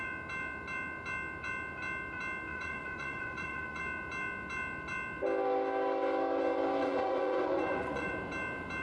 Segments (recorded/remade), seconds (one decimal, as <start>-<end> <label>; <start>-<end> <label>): 0.0-2.5 recorded; 2.5-3.8 remade; 3.8-6.8 recorded; 6.8-8.1 remade; 8.1-8.8 recorded